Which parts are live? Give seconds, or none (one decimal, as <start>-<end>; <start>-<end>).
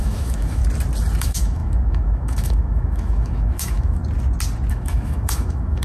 0.6-1.2; 4.0-4.7